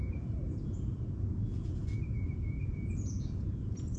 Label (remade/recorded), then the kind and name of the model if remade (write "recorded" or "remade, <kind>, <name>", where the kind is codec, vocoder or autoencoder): remade, vocoder, Vocos